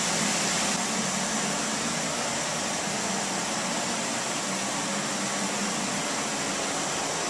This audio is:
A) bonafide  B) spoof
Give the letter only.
A